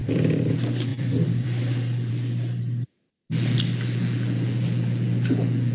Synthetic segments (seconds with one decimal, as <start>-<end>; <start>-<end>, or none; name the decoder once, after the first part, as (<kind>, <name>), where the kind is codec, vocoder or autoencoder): 0.0-0.5 (vocoder, BigVGAN v2); 0.9-2.1